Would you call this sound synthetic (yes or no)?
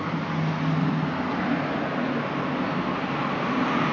no